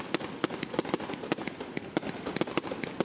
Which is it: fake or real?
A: real